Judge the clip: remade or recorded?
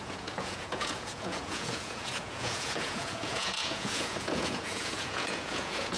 remade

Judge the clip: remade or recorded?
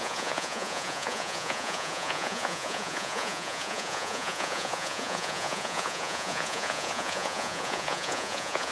remade